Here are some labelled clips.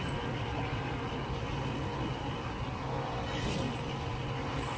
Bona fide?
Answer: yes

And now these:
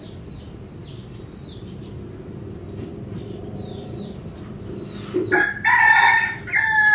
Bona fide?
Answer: yes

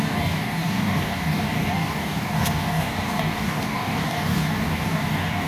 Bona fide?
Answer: no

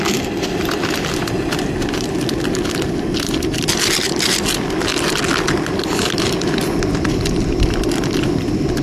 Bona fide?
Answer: yes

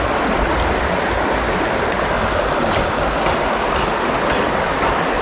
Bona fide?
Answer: yes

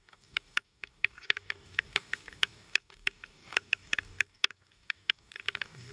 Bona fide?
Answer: no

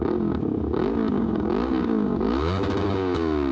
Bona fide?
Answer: no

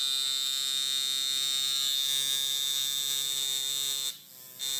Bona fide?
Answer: yes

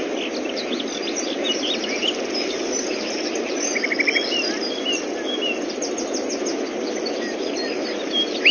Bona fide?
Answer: yes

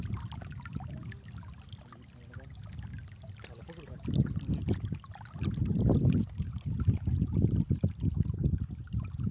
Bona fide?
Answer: yes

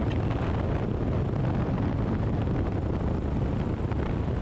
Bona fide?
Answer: yes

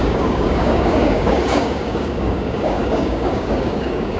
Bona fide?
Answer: no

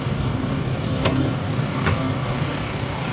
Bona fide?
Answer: no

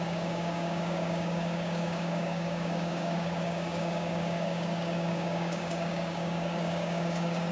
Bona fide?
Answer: no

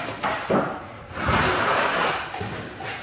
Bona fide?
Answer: yes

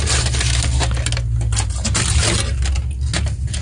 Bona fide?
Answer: yes